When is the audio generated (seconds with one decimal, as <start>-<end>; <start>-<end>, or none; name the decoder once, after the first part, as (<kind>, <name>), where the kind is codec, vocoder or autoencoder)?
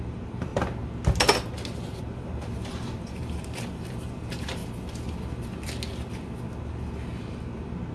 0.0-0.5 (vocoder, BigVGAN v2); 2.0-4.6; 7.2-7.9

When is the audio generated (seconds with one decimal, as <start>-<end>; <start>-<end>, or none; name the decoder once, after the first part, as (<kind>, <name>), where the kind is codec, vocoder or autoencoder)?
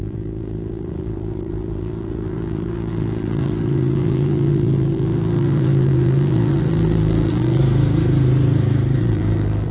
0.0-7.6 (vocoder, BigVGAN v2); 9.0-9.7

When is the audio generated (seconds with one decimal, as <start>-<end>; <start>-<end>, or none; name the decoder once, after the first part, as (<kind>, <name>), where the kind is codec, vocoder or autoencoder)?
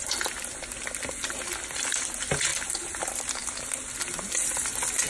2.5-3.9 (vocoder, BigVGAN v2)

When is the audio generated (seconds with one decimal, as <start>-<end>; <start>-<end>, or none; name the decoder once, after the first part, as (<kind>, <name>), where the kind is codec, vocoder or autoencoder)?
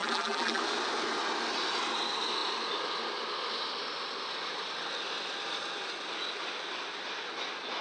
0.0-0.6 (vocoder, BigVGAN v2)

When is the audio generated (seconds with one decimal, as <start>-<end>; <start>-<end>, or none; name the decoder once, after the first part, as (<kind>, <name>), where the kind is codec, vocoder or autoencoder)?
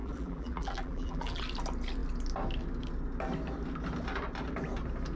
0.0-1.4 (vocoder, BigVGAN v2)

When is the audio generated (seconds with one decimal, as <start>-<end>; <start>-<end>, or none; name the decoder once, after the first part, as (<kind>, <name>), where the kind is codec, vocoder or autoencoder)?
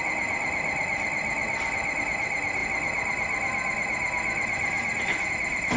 1.2-2.0 (vocoder, BigVGAN v2)